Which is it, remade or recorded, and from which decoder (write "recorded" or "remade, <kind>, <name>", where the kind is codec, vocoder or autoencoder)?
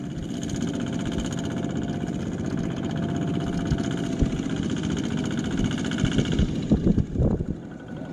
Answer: recorded